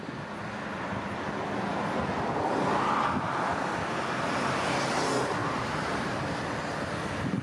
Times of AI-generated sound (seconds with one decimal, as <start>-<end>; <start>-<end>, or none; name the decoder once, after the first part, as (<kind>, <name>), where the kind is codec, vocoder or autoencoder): 5.4-6.6 (vocoder, BigVGAN v2)